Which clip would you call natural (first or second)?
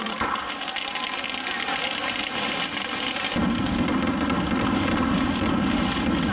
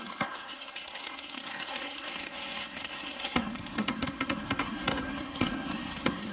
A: first